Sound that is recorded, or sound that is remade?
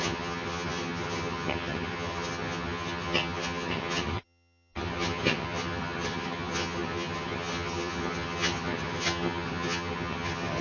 remade